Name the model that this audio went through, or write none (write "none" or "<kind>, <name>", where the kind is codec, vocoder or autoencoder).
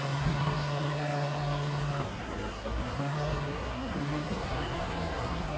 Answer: codec, SNAC